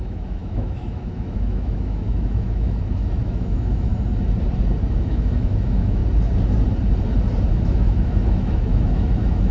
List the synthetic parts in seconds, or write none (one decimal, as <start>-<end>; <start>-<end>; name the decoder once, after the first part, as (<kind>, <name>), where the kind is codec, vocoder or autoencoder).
0.0-3.9 (autoencoder, DAC-VAE); 4.9-6.0; 7.5-9.5